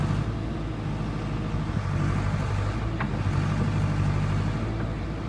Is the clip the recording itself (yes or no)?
yes